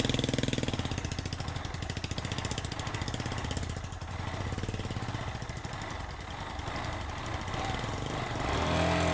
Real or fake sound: real